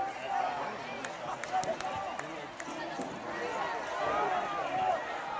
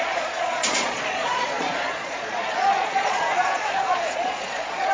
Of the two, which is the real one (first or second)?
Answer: first